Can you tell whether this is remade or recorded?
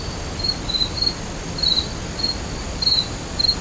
recorded